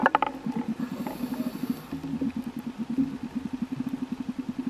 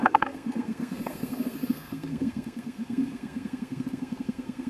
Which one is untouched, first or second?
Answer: first